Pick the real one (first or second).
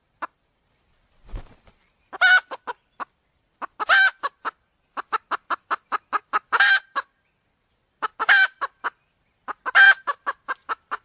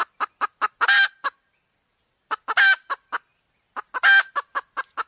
second